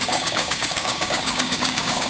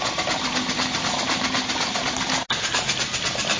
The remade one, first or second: first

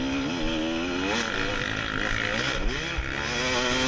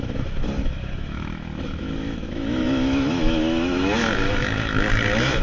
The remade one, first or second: second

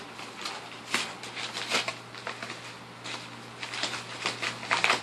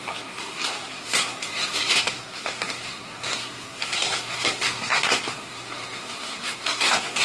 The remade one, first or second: second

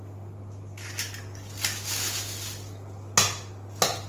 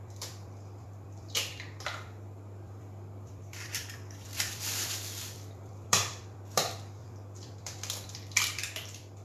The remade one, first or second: second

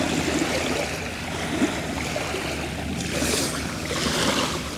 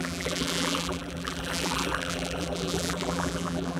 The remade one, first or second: second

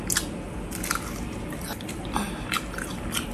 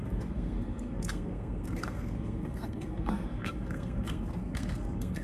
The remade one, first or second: second